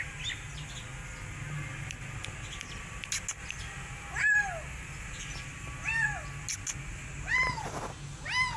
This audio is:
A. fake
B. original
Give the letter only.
B